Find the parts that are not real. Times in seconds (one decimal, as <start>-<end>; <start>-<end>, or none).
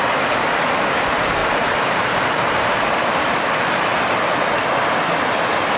1.4-3.5